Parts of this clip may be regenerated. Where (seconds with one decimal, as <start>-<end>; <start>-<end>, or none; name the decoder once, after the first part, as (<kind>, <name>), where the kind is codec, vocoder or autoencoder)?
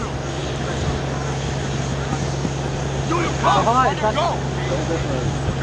0.4-1.0 (vocoder, BigVGAN v2)